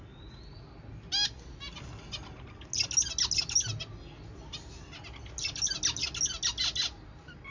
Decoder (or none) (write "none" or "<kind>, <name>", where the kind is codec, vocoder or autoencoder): none